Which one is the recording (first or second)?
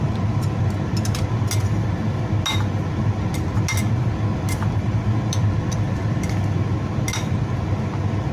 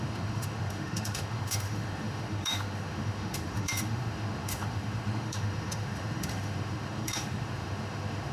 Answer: first